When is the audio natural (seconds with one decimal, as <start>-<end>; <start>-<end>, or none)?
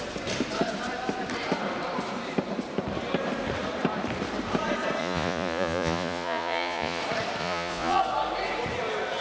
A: 0.0-5.0; 7.0-7.4; 8.0-9.2